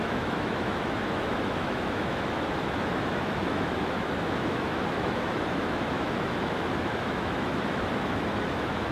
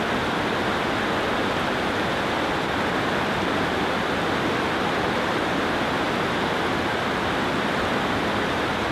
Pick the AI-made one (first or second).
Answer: first